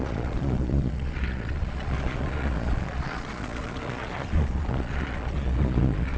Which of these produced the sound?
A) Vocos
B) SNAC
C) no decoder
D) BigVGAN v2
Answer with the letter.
A